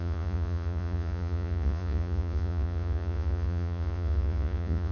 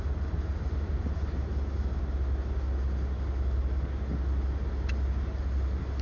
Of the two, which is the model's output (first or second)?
first